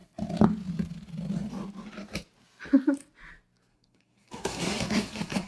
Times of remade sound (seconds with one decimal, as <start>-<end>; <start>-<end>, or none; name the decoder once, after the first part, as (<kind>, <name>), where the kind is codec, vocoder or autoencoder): 3.7-5.5 (codec, SNAC)